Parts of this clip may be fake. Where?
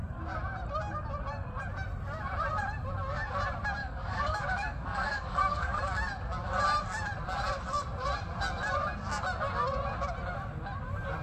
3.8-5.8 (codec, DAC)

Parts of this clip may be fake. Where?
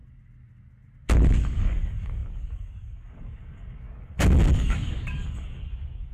1.4-6.1 (codec, DAC)